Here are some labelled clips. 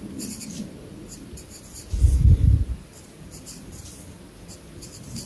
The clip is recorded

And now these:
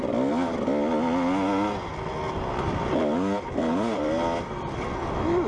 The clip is recorded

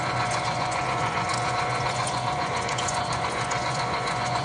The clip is remade